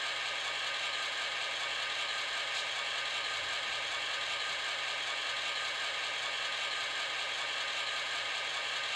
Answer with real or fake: real